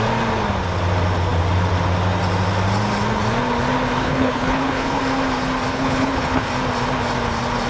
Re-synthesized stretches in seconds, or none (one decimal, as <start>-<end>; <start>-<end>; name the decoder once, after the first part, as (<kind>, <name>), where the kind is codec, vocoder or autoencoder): 4.0-5.0 (codec, HILCodec); 5.7-6.5